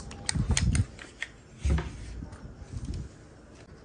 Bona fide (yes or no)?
yes